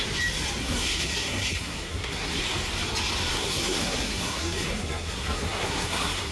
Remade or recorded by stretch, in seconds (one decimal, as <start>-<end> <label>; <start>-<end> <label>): 0.0-0.6 recorded; 0.6-2.4 remade; 2.4-3.3 recorded; 3.3-6.3 remade